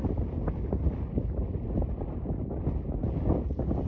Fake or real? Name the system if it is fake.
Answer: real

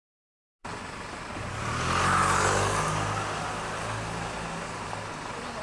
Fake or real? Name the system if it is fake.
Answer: real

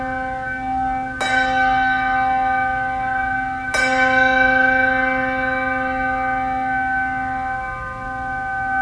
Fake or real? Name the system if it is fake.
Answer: real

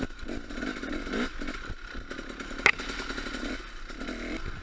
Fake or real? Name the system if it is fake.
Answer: real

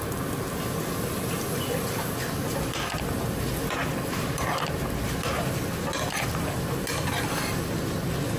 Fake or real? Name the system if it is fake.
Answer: real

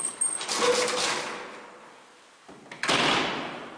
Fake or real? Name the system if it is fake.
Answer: real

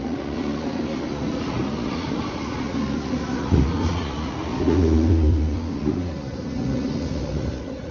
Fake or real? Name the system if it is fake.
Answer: fake, vocoder, Vocos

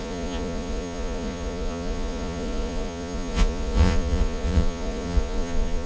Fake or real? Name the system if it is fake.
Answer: fake, vocoder, Vocos